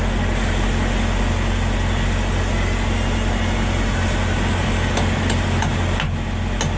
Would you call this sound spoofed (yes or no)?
no